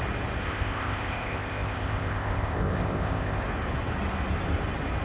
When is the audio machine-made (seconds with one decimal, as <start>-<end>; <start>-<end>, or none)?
0.4-3.4